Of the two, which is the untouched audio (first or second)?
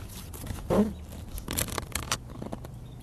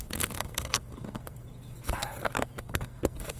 first